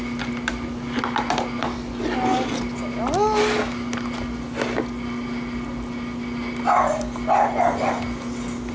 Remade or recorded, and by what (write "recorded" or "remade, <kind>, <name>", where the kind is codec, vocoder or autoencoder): recorded